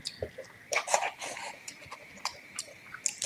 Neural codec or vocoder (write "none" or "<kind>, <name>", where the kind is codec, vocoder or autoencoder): none